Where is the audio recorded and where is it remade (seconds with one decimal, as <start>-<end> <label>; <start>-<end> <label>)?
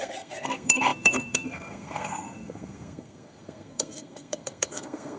0.0-5.2 remade